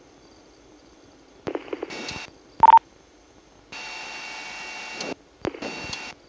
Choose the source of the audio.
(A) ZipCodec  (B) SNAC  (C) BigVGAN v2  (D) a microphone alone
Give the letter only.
D